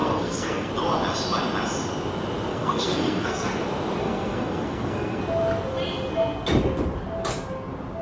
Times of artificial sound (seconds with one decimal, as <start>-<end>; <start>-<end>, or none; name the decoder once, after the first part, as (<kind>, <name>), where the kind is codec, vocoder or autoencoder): 0.0-0.7 (codec, SNAC); 2.5-3.6; 4.0-5.2